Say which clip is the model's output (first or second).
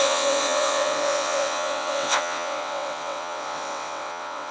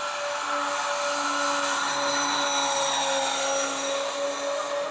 first